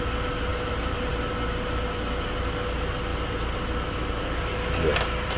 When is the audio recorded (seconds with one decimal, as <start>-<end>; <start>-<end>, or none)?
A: 0.0-0.5; 1.1-5.4